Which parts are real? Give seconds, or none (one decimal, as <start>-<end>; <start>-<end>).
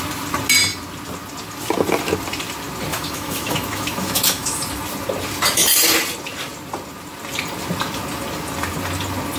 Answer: 0.0-2.9; 4.6-9.4